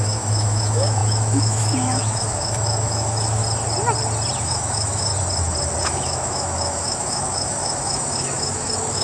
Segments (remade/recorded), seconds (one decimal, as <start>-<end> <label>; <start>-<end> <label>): 0.0-3.4 remade; 3.4-4.4 recorded; 4.4-5.1 remade; 5.1-5.8 recorded; 5.8-9.0 remade